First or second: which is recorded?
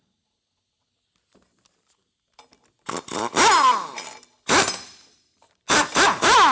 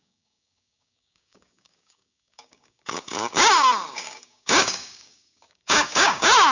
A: first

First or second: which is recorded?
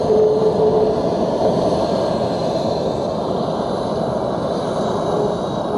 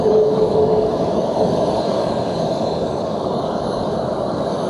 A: first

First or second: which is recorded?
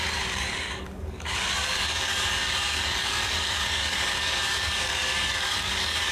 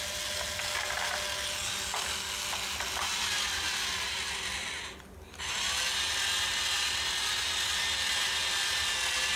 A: second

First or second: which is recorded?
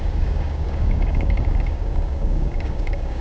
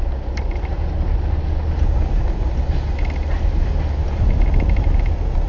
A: second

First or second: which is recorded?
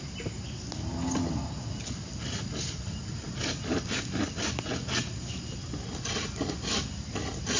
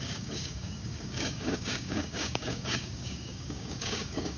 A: first